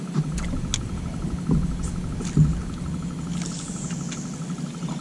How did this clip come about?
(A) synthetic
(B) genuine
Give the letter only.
B